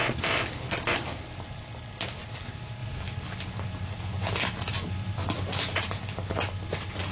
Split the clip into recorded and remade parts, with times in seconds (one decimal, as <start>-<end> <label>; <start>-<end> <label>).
0.0-7.1 recorded